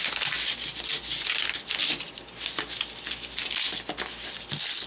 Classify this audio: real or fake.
real